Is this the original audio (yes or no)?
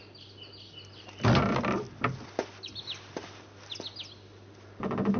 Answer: yes